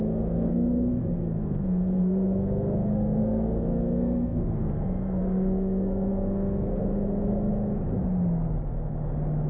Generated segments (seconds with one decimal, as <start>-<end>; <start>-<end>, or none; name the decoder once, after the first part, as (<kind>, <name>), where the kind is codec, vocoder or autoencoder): 0.0-7.5 (codec, SNAC)